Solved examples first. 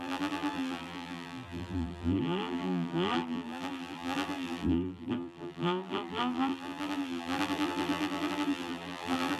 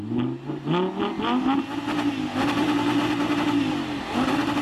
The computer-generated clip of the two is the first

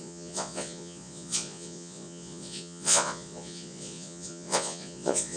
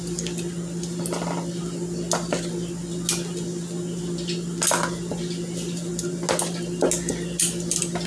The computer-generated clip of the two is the first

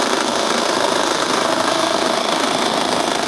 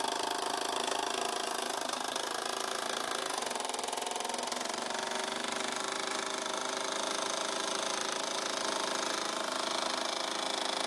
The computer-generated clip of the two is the first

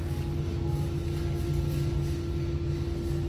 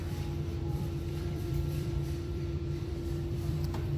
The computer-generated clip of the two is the second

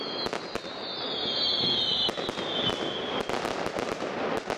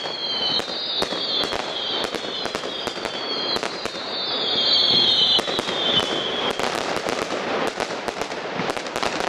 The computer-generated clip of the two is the second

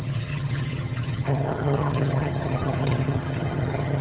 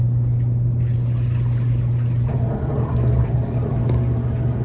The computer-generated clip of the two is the first